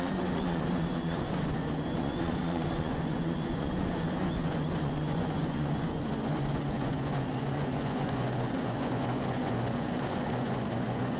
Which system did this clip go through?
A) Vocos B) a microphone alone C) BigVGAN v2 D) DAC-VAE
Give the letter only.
A